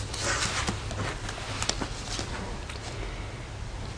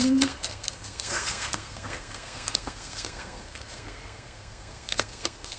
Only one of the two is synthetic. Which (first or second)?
second